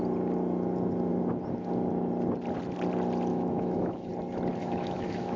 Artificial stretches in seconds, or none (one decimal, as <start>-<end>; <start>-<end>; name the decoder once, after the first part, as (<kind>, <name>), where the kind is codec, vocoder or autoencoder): 3.3-4.1 (autoencoder, DAC-VAE); 4.6-5.4